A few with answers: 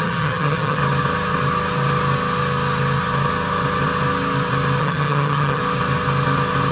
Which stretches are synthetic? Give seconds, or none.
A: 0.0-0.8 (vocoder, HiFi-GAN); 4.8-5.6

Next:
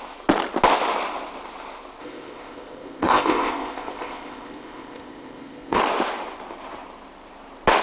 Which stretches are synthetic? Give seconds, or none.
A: 2.0-5.8 (codec, ZipCodec)

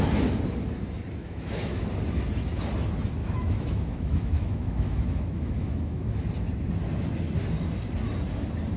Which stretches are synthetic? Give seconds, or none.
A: 1.2-1.8 (autoencoder, DAC-VAE); 3.2-6.3

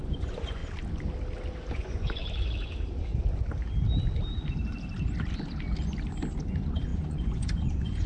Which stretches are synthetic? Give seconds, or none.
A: 0.0-0.6 (vocoder, Vocos); 1.7-2.2; 6.5-8.1

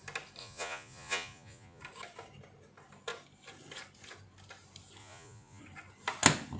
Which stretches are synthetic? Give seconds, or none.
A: 0.4-1.8 (vocoder, Vocos); 5.0-5.6

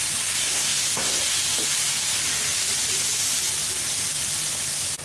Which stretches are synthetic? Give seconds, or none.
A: 0.4-1.2 (codec, SNAC)

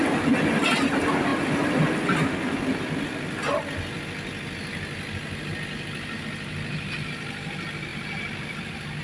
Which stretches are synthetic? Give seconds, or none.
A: none